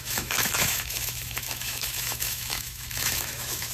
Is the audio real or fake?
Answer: fake